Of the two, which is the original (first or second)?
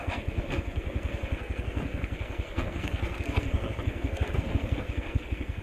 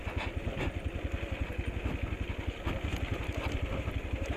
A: second